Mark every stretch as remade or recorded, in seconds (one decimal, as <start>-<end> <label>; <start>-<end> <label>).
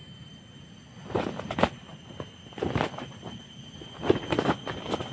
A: 0.0-5.1 recorded